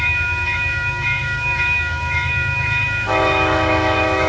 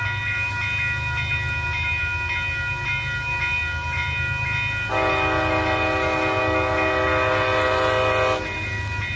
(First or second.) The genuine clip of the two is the second